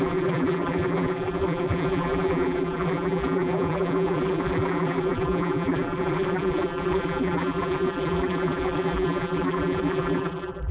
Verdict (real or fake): fake